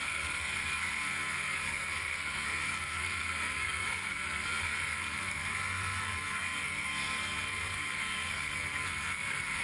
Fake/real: fake